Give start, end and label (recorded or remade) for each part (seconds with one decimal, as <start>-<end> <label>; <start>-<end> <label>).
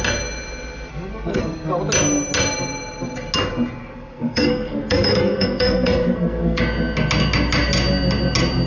0.0-0.9 recorded; 0.9-1.8 remade; 1.8-3.8 recorded; 3.8-6.6 remade; 6.6-8.7 recorded